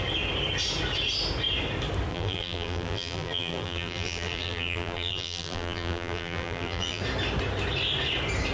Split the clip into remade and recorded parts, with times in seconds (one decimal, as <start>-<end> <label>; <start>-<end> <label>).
0.0-2.1 recorded; 2.1-7.0 remade; 7.0-8.5 recorded